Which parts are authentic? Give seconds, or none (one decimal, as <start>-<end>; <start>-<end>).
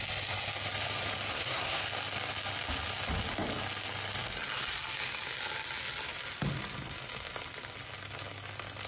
0.0-1.3; 1.8-8.9